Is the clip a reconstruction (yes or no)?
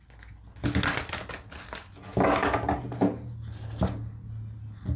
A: no